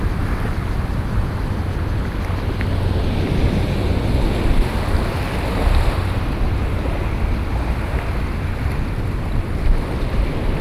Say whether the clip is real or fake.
real